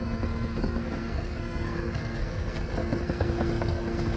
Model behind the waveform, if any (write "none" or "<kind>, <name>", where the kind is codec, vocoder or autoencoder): codec, SNAC